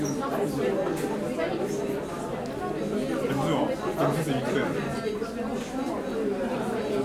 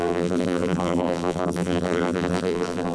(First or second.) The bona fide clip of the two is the first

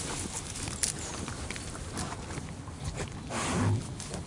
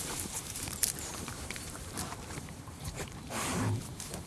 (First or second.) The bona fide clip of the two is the first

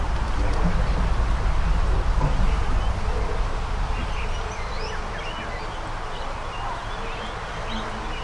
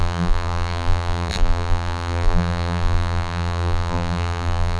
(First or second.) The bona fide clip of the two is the first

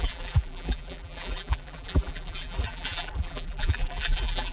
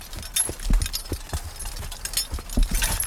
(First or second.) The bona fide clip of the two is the second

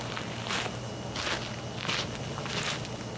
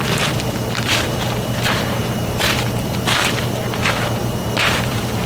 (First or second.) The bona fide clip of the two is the first